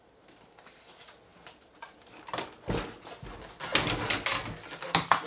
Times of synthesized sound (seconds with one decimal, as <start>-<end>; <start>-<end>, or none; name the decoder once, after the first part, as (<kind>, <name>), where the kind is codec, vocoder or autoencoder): none

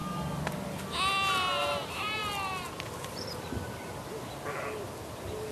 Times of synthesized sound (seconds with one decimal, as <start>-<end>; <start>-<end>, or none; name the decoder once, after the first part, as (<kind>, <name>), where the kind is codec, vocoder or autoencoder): none

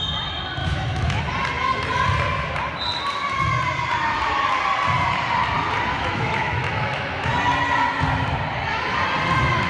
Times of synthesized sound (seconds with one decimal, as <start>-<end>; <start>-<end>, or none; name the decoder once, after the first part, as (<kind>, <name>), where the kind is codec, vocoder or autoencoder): 0.6-1.2 (autoencoder, DAC-VAE); 5.9-7.3

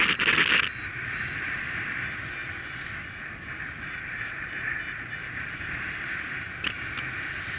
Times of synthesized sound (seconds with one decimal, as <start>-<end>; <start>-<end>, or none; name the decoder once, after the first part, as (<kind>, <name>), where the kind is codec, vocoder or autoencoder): none

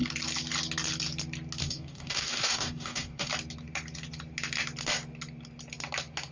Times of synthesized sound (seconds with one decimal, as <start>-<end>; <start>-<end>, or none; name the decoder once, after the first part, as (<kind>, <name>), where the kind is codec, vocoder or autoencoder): 1.6-3.3 (codec, DAC)

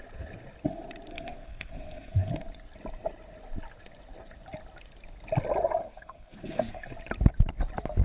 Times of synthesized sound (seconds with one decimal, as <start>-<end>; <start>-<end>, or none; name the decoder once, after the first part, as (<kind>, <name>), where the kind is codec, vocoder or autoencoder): 1.1-2.3 (codec, SNAC); 5.8-6.9

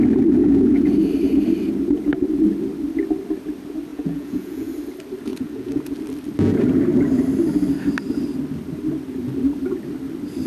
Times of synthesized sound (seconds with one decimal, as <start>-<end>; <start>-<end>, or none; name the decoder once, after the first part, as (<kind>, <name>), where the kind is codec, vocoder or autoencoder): 0.4-0.9 (vocoder, Vocos); 3.9-4.7; 5.3-5.8

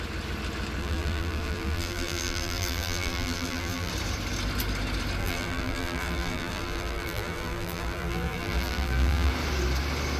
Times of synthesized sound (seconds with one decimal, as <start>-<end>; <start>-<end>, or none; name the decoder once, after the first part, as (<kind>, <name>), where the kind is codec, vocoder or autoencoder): 0.8-3.9 (vocoder, BigVGAN v2); 5.2-9.3